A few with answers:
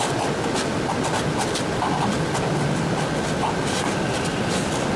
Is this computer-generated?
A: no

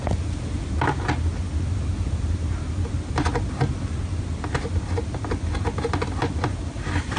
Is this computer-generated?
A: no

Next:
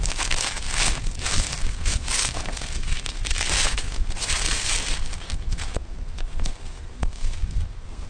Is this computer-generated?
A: yes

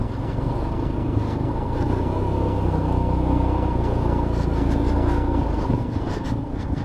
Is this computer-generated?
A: yes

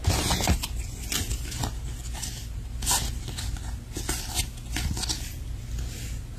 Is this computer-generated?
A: no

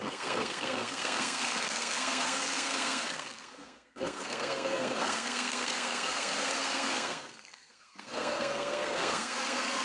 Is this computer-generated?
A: yes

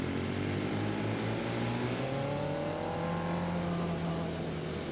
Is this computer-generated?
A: no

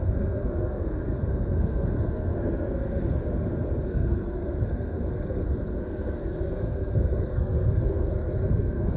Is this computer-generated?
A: yes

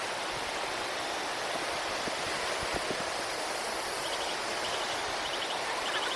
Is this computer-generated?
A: no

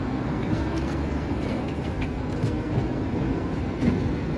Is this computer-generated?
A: yes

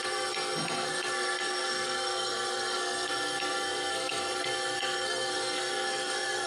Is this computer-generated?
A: yes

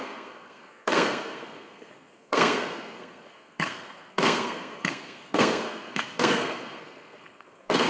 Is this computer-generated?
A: yes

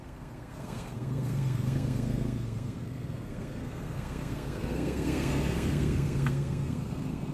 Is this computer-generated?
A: yes